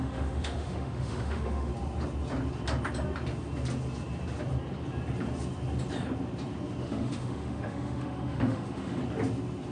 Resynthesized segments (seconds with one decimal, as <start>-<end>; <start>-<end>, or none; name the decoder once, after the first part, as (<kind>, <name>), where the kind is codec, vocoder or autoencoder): 0.0-1.7 (autoencoder, DAC-VAE); 6.8-9.0

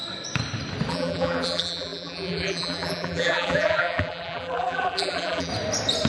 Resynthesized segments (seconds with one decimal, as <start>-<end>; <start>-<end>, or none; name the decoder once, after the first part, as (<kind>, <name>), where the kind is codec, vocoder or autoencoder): 0.9-5.5 (vocoder, BigVGAN v2)

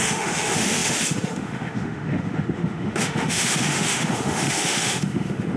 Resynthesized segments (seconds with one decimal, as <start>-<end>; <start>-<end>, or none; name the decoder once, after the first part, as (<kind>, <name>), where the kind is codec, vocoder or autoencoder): 0.0-5.6 (autoencoder, DAC-VAE)

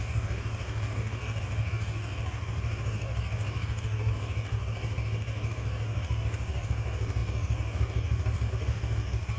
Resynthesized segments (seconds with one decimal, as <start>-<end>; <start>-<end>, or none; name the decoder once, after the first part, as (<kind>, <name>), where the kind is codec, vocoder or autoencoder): 0.0-9.4 (codec, DAC)